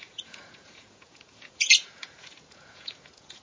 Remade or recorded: remade